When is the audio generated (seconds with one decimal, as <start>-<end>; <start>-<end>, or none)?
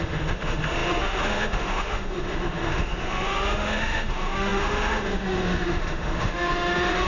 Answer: 0.0-7.1